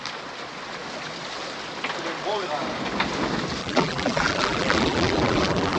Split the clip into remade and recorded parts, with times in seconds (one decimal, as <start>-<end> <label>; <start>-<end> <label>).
0.0-3.6 recorded; 3.6-5.8 remade